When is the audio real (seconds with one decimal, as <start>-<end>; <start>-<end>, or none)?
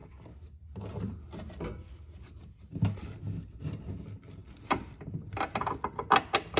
0.0-6.6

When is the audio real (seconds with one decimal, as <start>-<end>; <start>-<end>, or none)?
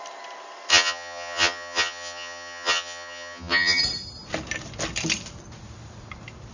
0.0-0.7; 3.8-6.5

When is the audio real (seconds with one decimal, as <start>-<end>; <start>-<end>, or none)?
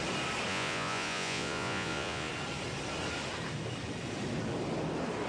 0.0-0.5; 2.3-5.3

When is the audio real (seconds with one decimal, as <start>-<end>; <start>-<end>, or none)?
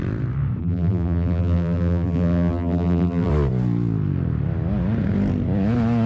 0.0-0.6; 3.3-6.1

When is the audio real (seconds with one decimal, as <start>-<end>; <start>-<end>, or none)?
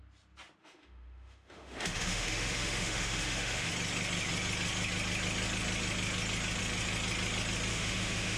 0.0-0.6; 3.7-7.7